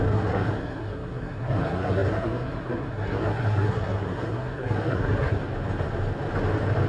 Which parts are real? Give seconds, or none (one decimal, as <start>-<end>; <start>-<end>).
5.4-6.9